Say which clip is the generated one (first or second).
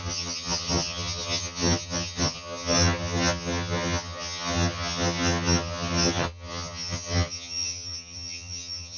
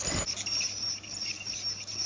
first